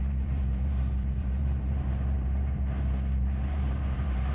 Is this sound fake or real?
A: fake